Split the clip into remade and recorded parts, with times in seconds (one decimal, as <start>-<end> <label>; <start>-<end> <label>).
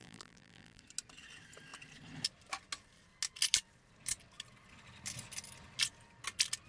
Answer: 0.0-0.8 remade; 0.8-6.7 recorded